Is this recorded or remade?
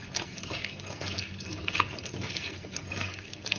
remade